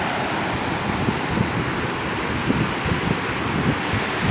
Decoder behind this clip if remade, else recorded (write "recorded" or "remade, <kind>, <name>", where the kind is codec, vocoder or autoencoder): recorded